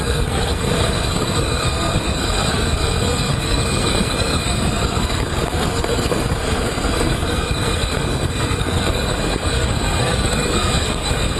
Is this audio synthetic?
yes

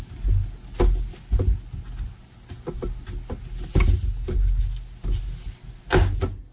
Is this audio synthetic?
no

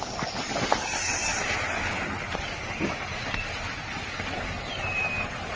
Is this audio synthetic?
no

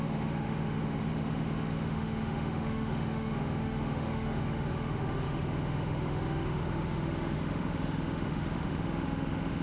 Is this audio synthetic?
yes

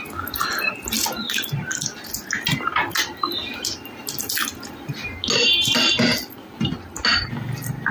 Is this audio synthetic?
no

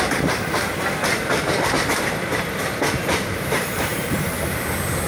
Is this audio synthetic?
yes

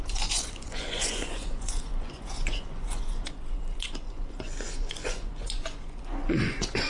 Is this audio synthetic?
yes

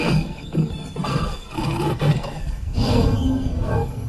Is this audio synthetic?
yes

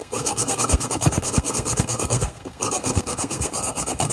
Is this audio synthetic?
yes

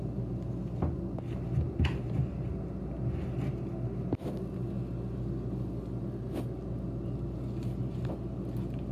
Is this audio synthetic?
no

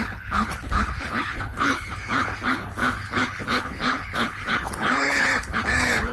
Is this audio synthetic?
yes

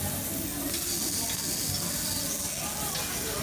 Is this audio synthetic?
no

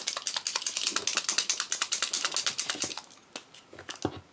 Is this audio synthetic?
no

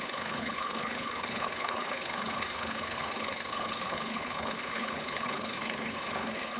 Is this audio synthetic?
yes